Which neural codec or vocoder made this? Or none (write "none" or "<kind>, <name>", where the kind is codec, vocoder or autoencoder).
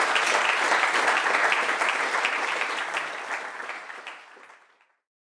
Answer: none